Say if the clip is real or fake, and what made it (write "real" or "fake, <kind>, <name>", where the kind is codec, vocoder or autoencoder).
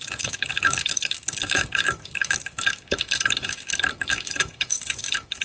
fake, autoencoder, DAC-VAE